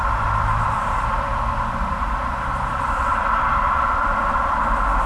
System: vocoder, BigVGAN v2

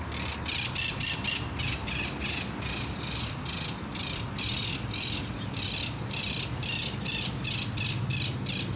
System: none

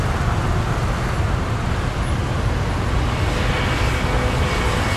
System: none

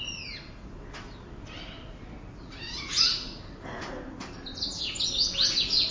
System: none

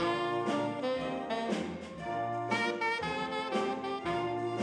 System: none